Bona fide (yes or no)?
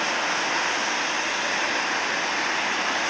yes